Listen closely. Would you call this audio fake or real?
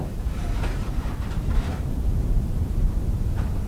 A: fake